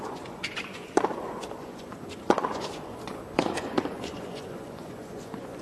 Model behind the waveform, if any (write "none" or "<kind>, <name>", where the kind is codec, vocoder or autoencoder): vocoder, Vocos